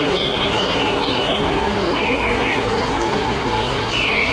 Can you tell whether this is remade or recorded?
remade